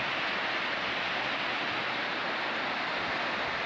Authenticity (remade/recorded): recorded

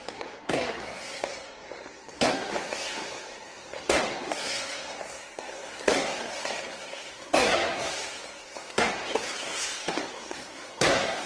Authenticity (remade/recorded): remade